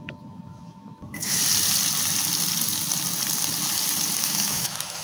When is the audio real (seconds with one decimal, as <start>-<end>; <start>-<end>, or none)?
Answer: 1.4-4.2